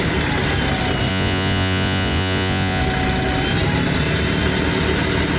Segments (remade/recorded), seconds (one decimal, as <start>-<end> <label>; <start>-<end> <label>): 0.0-1.1 recorded; 1.1-2.8 remade; 2.8-5.4 recorded